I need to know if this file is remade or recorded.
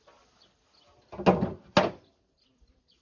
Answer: recorded